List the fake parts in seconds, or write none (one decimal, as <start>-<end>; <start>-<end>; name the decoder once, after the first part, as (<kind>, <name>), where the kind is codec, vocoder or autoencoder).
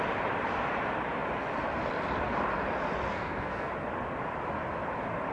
3.1-3.7 (codec, SNAC)